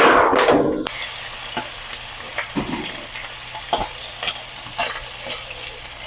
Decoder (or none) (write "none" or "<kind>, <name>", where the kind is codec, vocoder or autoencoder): none